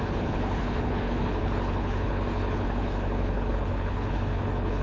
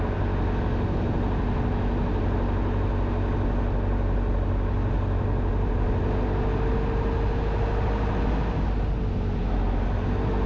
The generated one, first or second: first